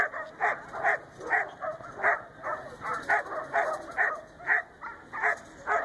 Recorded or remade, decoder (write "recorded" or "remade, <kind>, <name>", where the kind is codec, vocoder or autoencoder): recorded